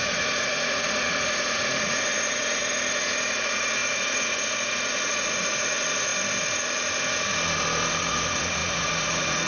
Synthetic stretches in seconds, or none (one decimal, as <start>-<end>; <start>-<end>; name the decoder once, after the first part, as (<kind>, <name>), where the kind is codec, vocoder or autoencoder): 0.0-2.6 (vocoder, Vocos); 3.3-6.1; 8.0-9.5